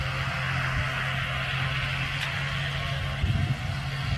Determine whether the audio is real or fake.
real